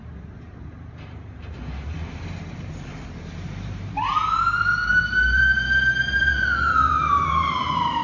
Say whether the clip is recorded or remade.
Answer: remade